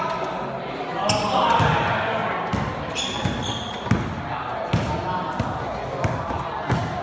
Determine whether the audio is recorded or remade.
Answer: recorded